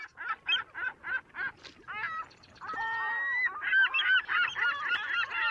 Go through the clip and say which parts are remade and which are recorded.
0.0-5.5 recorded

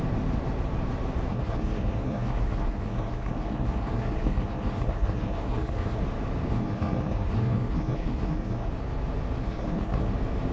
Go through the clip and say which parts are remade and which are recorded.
0.0-1.3 recorded; 1.3-6.0 remade; 6.0-6.5 recorded; 6.5-8.7 remade; 8.7-9.4 recorded; 9.4-10.1 remade; 10.1-10.5 recorded

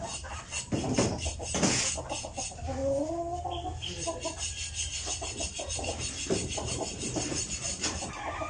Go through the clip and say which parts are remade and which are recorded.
0.0-8.5 recorded